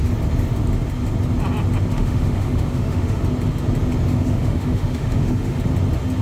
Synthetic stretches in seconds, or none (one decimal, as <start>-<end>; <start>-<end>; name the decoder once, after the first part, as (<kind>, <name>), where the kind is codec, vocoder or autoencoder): 1.9-3.2 (autoencoder, DAC-VAE); 4.1-5.6